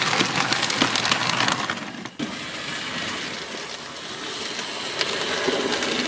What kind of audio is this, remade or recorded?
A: recorded